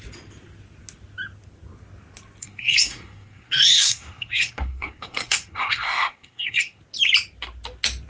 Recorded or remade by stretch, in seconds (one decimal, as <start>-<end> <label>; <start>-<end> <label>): 0.0-2.4 recorded; 2.4-6.8 remade; 6.8-8.1 recorded